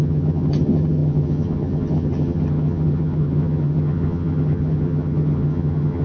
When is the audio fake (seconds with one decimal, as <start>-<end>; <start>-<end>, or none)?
0.0-6.0